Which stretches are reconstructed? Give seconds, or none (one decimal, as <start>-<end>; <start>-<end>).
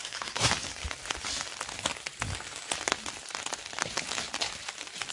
0.0-0.5